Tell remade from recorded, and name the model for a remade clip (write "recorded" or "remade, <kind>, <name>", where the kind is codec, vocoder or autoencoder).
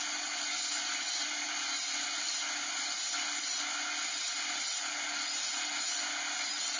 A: recorded